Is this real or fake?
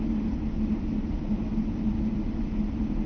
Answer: real